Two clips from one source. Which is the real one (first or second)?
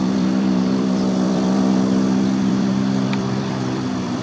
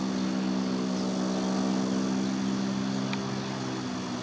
second